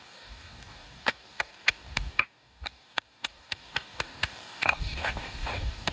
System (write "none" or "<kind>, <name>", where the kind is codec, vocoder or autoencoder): codec, DAC